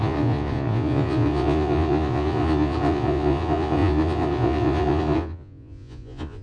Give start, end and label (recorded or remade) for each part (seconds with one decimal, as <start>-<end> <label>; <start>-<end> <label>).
0.0-6.4 remade